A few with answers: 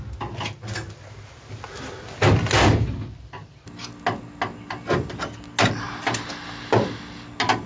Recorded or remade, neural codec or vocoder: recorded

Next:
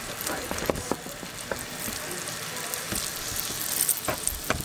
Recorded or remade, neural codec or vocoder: recorded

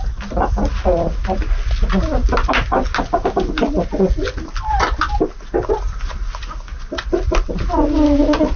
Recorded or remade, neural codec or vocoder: recorded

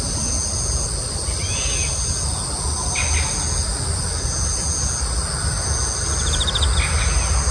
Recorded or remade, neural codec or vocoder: recorded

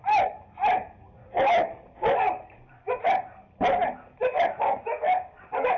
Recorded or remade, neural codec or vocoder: recorded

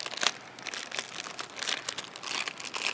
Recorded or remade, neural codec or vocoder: recorded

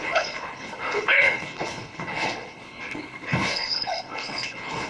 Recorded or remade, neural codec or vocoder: remade, codec, HILCodec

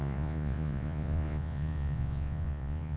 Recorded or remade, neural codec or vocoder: remade, vocoder, Vocos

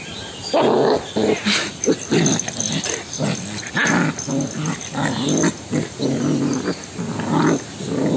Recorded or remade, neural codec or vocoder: recorded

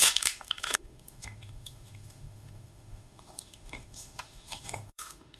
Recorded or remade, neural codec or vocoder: remade, autoencoder, DAC-VAE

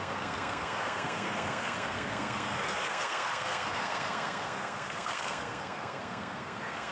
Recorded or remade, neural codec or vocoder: remade, codec, SNAC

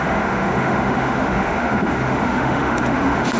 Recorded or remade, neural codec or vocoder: remade, autoencoder, DAC-VAE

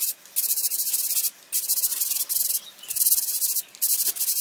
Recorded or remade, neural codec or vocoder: recorded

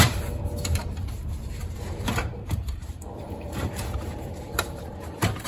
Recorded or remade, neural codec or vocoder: remade, vocoder, BigVGAN v2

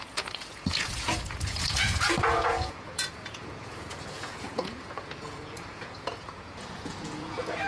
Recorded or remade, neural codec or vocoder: remade, vocoder, Vocos